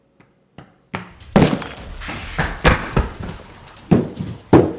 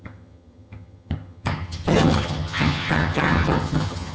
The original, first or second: first